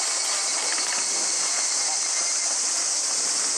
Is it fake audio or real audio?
real